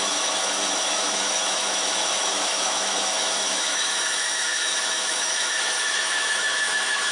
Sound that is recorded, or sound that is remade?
remade